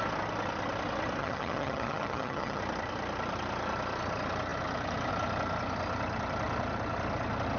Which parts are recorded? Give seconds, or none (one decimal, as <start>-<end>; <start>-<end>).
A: 0.0-1.2; 2.6-7.6

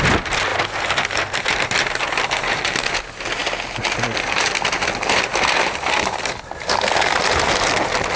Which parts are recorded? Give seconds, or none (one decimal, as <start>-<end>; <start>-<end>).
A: 0.0-8.2

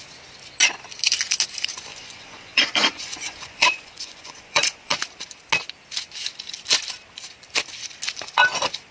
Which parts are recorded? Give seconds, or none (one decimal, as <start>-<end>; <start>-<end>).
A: 0.0-1.9; 4.9-8.9

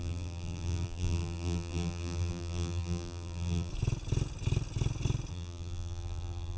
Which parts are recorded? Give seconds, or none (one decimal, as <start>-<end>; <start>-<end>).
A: 3.7-5.3

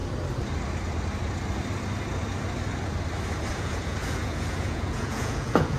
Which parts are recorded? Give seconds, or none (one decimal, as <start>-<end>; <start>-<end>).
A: 0.0-3.5